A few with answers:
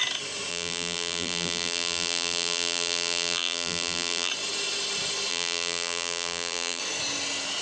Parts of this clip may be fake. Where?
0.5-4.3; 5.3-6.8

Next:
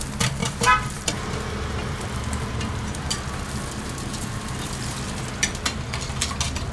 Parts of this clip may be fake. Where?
0.4-3.1

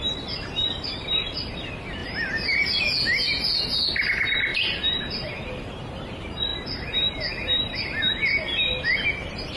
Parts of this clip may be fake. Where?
2.0-2.8; 4.5-5.3; 6.5-8.1

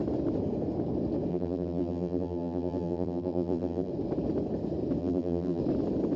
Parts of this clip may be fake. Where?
1.3-3.9; 5.0-5.6

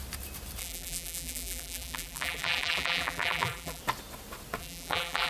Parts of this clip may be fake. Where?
0.6-3.8; 4.6-5.3

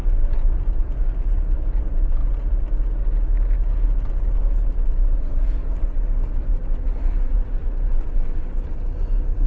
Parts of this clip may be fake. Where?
0.0-2.2; 4.8-7.6

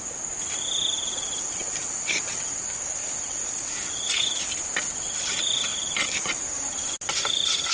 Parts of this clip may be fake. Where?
1.1-2.3; 5.7-7.1